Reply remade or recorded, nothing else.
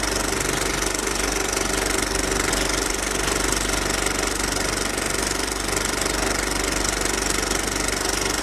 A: recorded